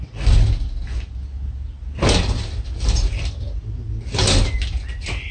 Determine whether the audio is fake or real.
real